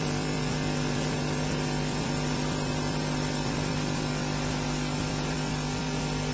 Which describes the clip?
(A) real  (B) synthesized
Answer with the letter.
B